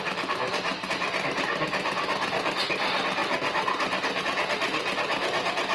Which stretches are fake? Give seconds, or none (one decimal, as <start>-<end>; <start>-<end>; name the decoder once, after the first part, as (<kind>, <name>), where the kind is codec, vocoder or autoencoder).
none